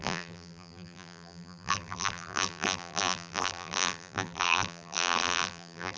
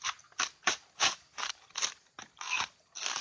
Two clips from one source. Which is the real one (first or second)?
second